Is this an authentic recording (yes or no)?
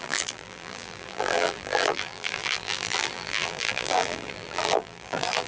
no